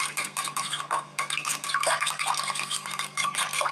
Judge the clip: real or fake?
fake